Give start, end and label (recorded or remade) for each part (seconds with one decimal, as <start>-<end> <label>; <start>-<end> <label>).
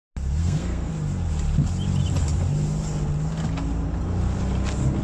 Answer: 0.0-0.4 recorded; 0.4-0.9 remade; 0.9-5.0 recorded